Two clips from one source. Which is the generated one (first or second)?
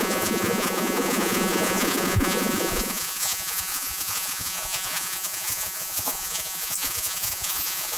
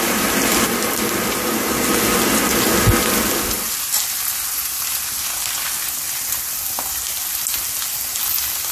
first